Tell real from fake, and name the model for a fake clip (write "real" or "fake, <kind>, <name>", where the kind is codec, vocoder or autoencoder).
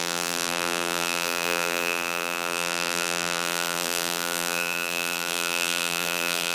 fake, vocoder, BigVGAN v2